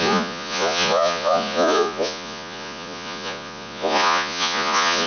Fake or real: fake